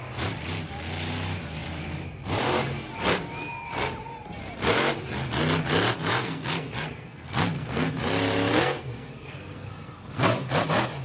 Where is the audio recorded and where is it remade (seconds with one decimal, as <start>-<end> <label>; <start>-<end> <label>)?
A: 0.0-6.2 recorded; 6.2-8.0 remade; 8.0-8.5 recorded; 8.5-10.5 remade; 10.5-11.0 recorded